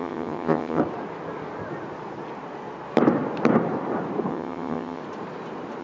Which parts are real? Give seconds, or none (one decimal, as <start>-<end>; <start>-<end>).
0.8-4.3; 5.0-5.8